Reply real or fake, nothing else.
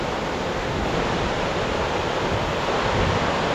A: real